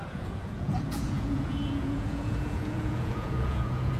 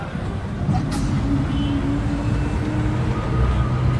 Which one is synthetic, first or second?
first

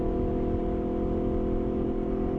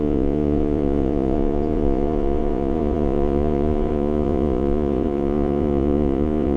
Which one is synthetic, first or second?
second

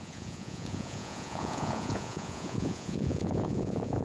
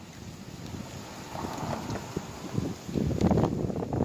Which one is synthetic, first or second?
first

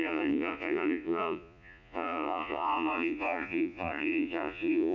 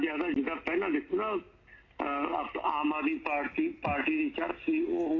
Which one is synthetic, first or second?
first